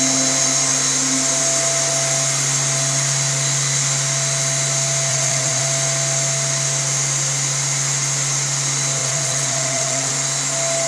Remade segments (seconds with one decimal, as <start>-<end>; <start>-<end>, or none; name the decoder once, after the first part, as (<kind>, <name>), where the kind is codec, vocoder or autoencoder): 5.1-5.6 (vocoder, WaveNeXt); 9.0-10.1